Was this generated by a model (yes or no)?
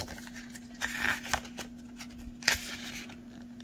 no